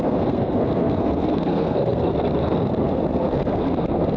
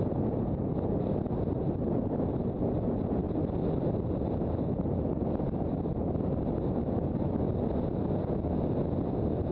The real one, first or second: second